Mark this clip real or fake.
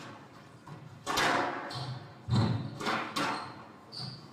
real